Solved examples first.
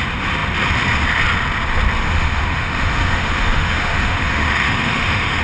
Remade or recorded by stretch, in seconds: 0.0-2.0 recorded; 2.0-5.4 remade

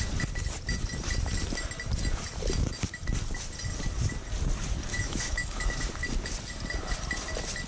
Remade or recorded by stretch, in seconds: 0.0-4.9 recorded; 4.9-5.9 remade; 5.9-7.7 recorded